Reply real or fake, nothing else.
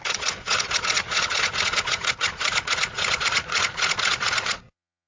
fake